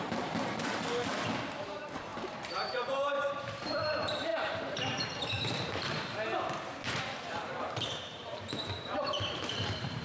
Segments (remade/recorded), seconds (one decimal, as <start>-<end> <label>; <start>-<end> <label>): 0.0-0.7 remade; 0.7-1.6 recorded; 1.6-10.0 remade